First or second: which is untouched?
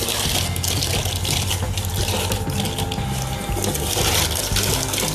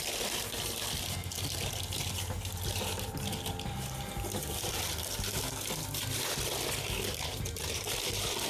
first